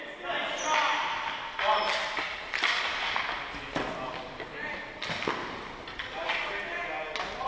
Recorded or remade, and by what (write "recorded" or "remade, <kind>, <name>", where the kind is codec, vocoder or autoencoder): recorded